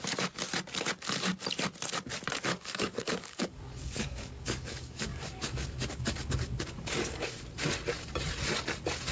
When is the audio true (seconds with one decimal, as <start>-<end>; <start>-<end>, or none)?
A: 0.0-2.5; 7.4-9.1